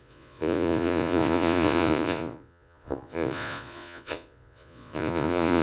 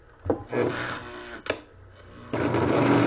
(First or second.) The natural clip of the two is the second